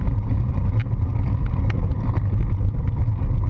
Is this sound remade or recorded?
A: recorded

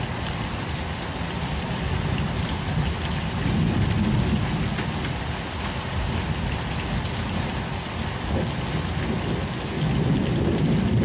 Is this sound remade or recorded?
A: recorded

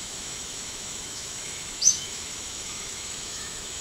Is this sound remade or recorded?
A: remade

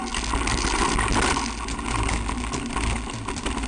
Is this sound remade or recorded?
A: recorded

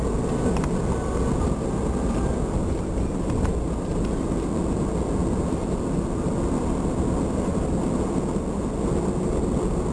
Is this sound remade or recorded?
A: recorded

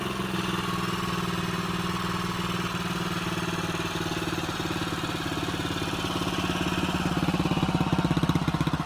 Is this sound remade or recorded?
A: recorded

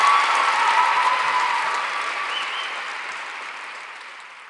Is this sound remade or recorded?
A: recorded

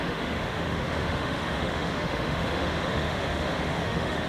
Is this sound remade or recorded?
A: remade